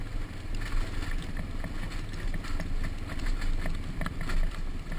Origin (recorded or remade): recorded